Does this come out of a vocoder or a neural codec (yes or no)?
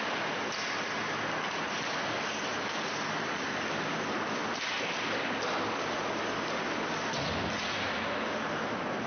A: no